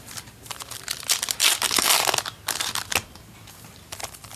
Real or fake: real